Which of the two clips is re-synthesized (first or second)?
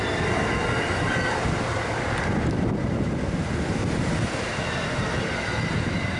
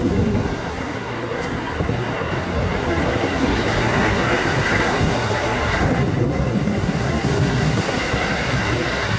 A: second